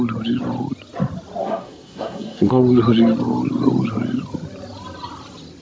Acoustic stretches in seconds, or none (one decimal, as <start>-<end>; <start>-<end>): 0.0-1.4; 2.6-5.6